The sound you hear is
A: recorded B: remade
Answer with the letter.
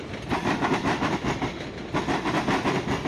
B